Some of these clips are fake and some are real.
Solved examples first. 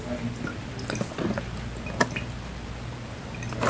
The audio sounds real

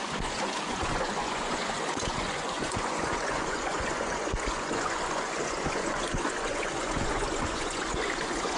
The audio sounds fake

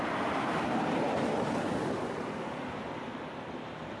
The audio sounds real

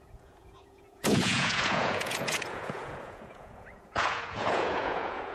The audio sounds fake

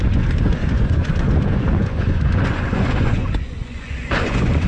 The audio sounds fake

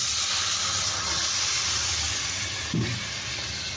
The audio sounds real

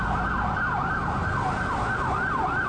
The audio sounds real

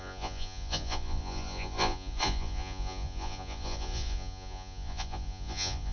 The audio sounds fake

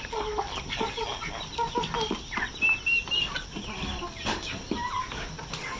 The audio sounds real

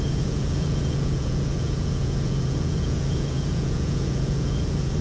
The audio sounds fake